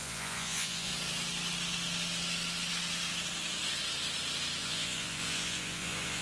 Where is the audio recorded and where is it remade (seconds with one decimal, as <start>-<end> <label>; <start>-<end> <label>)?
0.0-0.9 remade; 0.9-4.6 recorded; 4.6-6.2 remade